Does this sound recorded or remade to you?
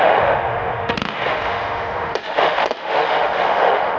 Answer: remade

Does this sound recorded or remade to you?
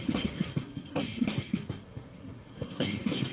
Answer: remade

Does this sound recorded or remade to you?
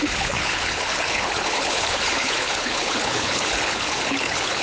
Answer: remade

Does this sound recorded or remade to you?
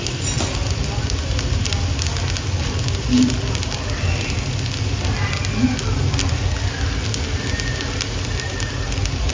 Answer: recorded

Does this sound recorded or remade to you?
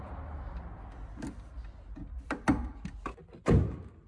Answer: recorded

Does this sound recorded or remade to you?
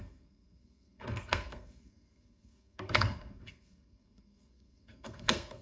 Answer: remade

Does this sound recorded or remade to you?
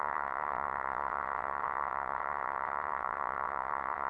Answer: remade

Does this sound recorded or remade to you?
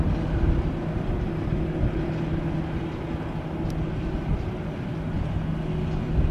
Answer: recorded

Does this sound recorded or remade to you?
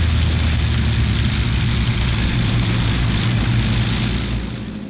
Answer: recorded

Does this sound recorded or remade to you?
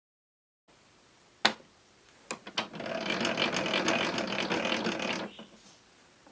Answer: recorded